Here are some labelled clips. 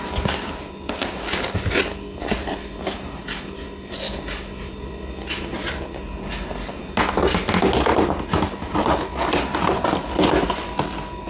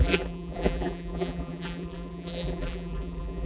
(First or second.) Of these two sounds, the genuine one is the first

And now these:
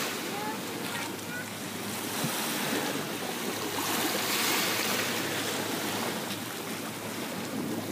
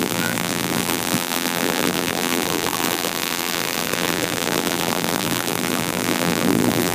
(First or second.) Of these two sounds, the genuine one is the first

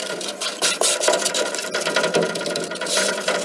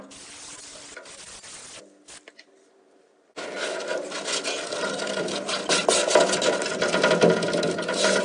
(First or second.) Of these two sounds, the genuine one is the second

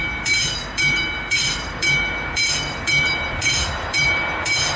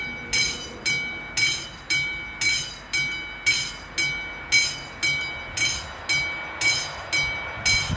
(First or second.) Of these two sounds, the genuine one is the second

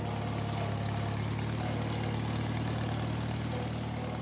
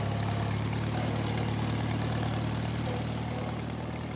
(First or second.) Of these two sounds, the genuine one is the first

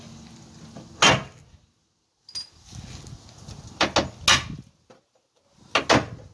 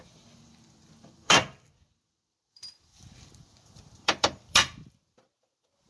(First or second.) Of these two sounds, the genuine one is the first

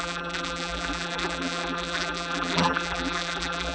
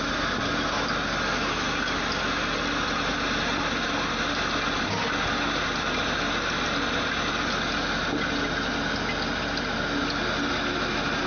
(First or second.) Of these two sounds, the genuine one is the second